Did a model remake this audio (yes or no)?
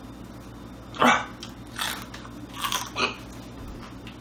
no